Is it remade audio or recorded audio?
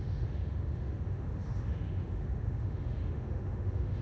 remade